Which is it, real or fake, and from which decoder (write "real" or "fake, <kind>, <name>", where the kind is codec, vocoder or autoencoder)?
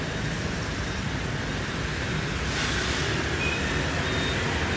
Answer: real